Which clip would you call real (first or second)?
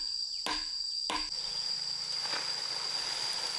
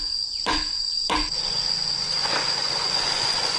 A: first